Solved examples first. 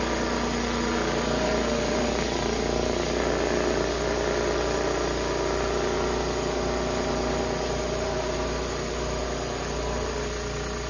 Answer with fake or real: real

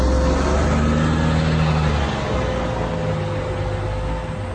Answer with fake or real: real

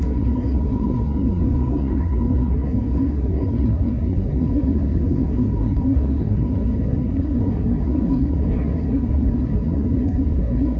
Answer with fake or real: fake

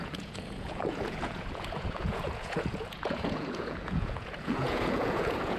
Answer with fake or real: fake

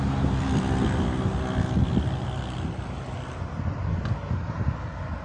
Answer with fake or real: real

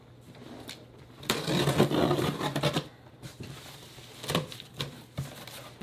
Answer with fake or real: real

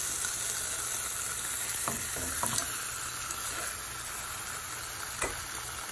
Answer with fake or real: real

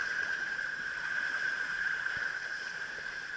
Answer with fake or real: fake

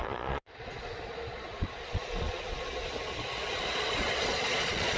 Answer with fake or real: fake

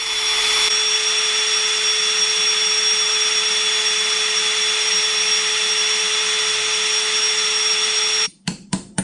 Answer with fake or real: fake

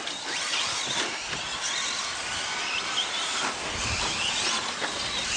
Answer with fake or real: real